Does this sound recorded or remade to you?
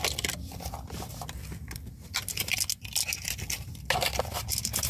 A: recorded